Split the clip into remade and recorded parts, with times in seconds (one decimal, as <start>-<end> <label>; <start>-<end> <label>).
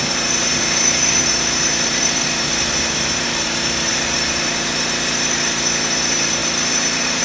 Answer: 0.0-7.2 remade